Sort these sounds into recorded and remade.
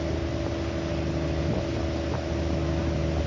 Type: recorded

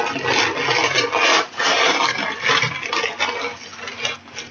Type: recorded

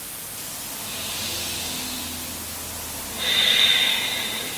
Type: recorded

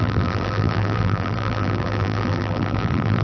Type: remade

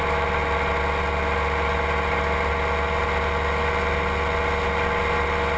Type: recorded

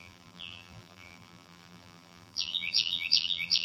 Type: remade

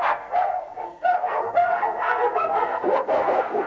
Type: remade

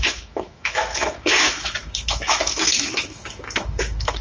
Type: remade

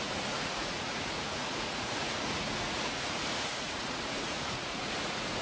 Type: remade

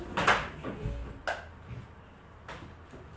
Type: recorded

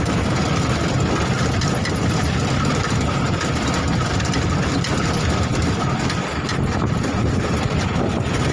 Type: remade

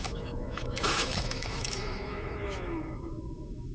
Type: remade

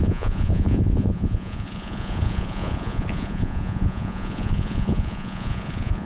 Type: remade